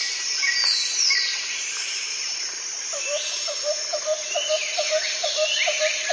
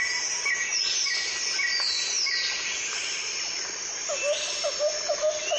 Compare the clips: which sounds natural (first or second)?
second